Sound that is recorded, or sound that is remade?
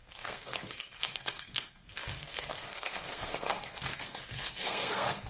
remade